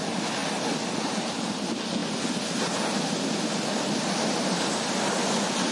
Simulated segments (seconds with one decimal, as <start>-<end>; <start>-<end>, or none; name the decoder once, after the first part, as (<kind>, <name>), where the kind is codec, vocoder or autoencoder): none